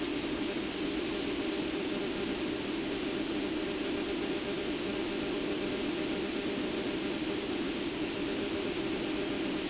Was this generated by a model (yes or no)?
no